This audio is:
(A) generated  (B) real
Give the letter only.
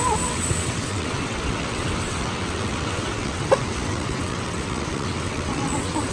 A